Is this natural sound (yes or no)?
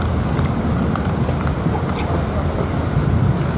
yes